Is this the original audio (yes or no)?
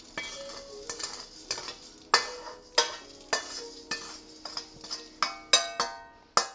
yes